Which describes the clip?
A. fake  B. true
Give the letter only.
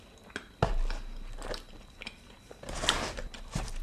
B